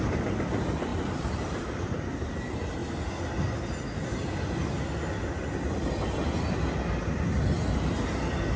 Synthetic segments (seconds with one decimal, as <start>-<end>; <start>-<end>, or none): 0.9-1.7